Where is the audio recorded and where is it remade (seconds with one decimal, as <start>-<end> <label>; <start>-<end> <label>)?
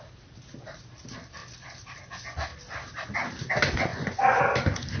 0.0-3.9 recorded; 3.9-4.4 remade; 4.4-5.0 recorded